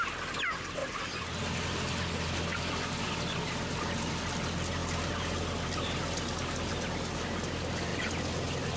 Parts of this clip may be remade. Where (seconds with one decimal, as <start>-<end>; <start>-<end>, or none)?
none